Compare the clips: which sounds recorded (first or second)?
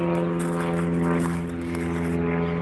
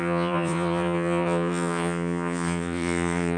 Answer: first